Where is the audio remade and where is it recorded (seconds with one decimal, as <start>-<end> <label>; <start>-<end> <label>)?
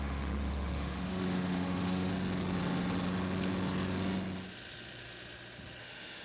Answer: 0.0-2.1 remade; 2.1-5.8 recorded; 5.8-6.2 remade